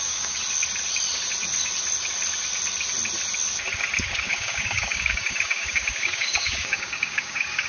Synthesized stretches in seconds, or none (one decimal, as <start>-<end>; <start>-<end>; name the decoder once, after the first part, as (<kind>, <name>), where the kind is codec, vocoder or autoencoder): 0.0-0.4 (codec, DAC); 4.3-7.7